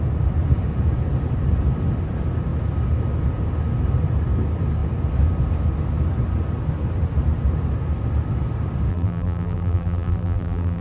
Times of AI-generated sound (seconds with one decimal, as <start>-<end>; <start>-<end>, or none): 8.9-10.8